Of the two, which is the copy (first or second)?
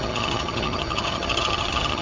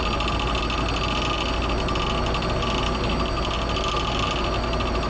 first